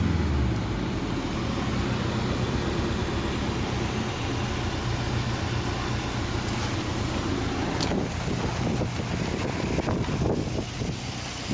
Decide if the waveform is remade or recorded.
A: recorded